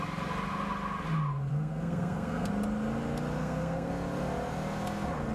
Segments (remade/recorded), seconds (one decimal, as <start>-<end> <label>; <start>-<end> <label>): 0.0-1.5 recorded; 1.5-2.5 remade; 2.5-3.4 recorded; 3.4-3.9 remade; 3.9-5.3 recorded